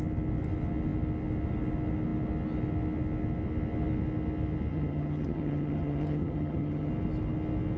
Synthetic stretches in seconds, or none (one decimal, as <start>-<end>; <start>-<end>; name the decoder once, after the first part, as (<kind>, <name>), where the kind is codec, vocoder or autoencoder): 4.7-6.9 (vocoder, HiFi-GAN)